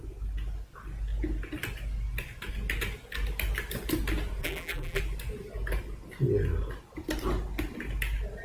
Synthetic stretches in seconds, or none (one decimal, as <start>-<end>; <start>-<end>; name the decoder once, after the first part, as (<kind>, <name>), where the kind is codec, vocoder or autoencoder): 4.4-5.0 (vocoder, BigVGAN v2)